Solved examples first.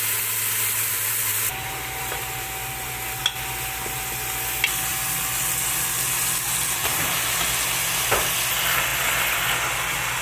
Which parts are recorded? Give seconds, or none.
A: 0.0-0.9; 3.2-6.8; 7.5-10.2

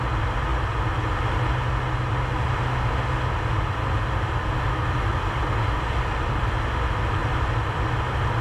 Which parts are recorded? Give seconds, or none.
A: 0.0-5.1; 6.4-7.2; 7.8-8.4